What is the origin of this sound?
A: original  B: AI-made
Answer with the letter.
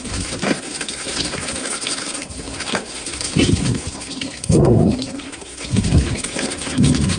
B